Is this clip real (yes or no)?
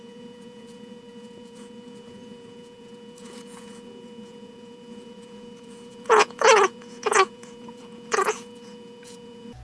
no